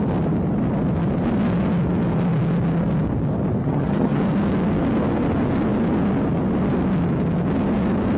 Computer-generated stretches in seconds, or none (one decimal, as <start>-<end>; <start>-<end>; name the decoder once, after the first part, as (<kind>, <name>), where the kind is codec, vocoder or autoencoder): 3.6-4.2 (vocoder, HiFi-GAN)